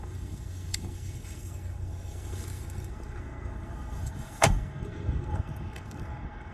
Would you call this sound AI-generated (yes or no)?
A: yes